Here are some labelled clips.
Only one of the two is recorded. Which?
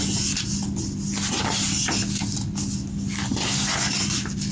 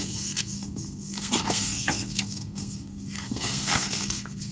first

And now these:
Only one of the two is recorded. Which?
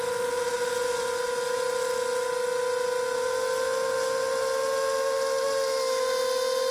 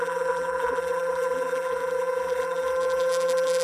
first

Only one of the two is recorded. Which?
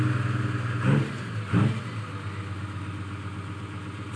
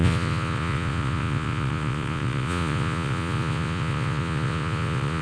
first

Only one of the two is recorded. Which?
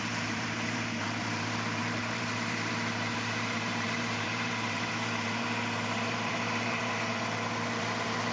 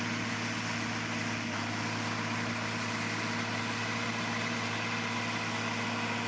second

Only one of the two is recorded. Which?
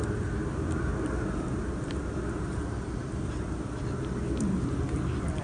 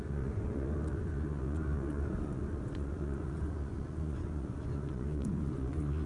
first